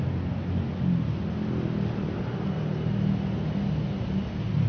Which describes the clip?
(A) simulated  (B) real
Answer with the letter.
B